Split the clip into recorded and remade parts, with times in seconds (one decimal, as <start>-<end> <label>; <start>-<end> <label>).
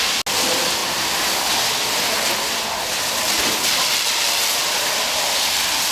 0.0-5.9 recorded